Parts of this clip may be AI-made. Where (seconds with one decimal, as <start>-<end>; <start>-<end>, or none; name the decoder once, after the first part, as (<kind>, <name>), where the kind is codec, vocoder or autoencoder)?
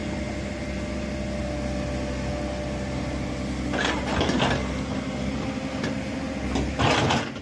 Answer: none